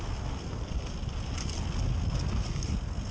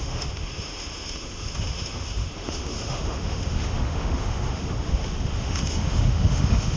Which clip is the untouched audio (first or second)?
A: first